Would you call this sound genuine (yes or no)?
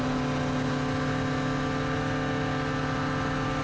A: yes